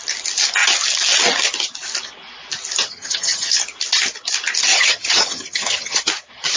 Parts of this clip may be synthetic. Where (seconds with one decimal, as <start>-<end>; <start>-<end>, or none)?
2.8-3.5; 4.7-6.0